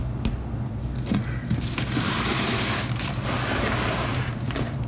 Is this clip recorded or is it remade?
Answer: recorded